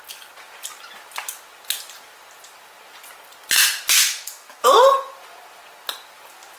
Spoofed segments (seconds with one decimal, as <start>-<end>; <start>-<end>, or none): 4.0-4.6